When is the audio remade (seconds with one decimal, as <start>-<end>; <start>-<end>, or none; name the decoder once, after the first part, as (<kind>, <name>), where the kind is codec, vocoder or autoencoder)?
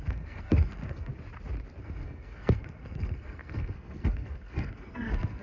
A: 0.0-1.1 (codec, SNAC); 1.8-5.4